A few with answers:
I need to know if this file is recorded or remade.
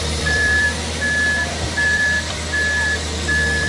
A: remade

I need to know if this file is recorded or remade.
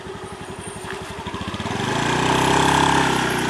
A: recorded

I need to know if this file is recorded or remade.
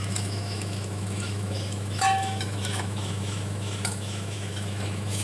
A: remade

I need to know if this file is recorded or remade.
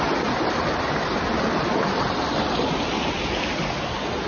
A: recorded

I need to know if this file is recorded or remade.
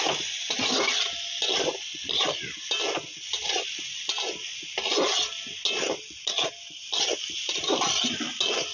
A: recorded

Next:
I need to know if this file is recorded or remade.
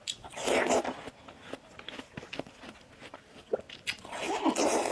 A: recorded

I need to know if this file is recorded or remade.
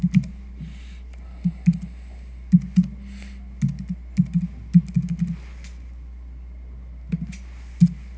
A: recorded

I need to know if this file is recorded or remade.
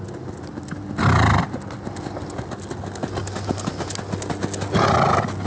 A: recorded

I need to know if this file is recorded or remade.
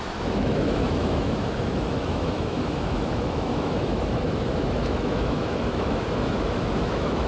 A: remade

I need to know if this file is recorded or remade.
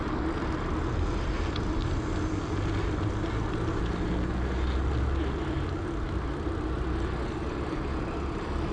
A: recorded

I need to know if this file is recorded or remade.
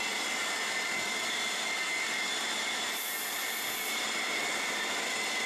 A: remade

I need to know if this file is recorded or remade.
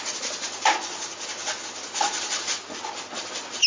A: recorded